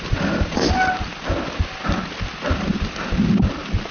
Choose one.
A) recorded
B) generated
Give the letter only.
A